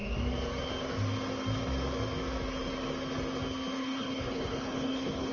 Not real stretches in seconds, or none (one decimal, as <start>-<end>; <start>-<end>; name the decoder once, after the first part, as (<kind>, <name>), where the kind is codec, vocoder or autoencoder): 3.8-5.3 (codec, HILCodec)